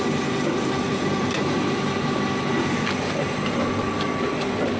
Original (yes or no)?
yes